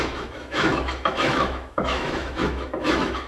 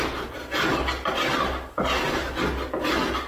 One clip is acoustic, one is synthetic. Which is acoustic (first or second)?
second